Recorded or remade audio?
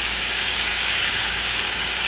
remade